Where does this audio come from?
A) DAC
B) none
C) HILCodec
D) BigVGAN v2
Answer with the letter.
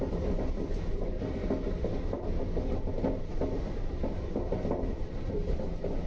B